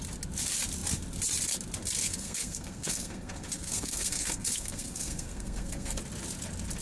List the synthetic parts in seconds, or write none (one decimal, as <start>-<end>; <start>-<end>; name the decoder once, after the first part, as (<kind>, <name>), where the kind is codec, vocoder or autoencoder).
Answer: 2.0-6.0 (codec, SNAC)